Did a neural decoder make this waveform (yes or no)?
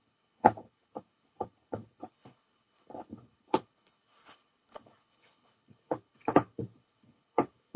yes